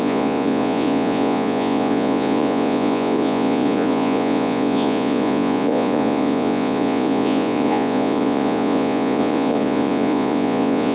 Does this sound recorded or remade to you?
remade